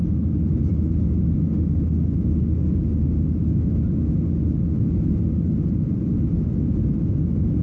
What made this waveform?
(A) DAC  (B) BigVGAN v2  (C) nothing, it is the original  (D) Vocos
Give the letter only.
C